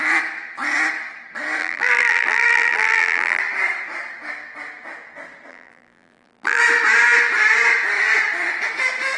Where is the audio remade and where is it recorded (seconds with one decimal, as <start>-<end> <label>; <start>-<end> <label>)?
0.0-1.6 recorded; 1.6-3.4 remade; 3.4-5.5 recorded; 5.5-6.6 remade; 6.6-9.2 recorded